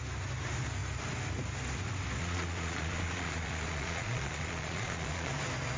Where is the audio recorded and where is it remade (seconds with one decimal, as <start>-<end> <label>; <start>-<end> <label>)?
0.0-2.2 recorded; 2.2-5.3 remade; 5.3-5.8 recorded